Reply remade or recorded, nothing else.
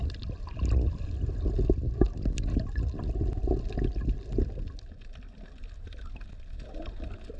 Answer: recorded